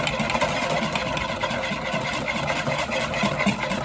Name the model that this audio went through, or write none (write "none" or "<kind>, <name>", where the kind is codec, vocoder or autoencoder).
none